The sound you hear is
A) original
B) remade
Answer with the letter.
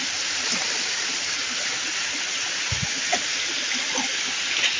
A